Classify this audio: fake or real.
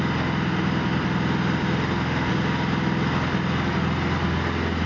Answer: real